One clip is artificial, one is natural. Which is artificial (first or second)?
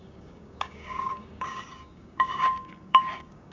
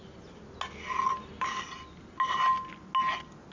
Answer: first